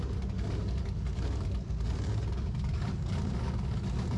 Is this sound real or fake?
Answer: fake